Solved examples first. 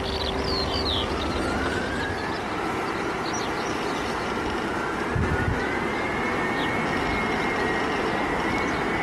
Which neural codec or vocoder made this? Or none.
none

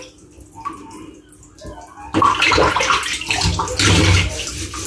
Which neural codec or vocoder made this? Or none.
none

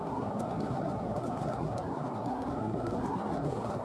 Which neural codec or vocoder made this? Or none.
codec, SNAC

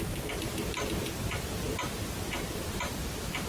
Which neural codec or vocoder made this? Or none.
vocoder, BigVGAN v2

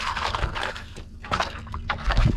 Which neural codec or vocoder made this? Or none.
codec, SNAC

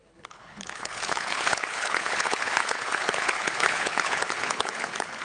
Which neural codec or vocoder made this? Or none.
codec, HILCodec